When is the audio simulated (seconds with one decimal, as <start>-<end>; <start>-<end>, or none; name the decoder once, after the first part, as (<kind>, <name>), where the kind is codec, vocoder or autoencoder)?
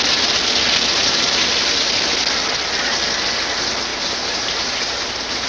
1.0-1.5 (vocoder, BigVGAN v2); 3.9-5.5